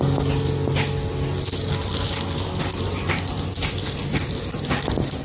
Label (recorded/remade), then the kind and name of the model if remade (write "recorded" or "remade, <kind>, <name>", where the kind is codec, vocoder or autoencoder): recorded